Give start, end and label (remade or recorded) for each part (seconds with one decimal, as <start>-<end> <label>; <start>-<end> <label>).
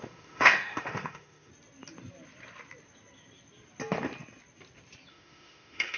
0.0-1.5 remade; 1.5-5.1 recorded; 5.1-6.0 remade